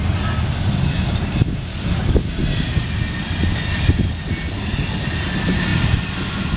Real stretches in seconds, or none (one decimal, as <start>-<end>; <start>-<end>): 0.0-1.7; 2.3-6.6

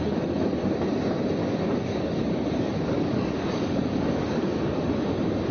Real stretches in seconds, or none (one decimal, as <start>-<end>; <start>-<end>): 0.0-1.4; 4.7-5.5

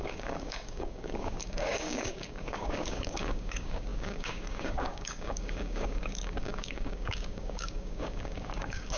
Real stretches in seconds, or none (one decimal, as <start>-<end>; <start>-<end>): none

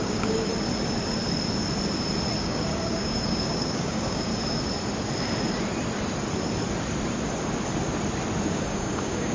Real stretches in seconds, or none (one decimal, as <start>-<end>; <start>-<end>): 0.5-2.4; 4.3-8.5